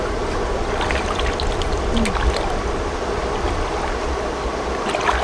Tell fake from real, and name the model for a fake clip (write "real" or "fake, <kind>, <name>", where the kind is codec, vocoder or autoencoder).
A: real